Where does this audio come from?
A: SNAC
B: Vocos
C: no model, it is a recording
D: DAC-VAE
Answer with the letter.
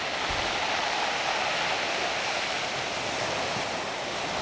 C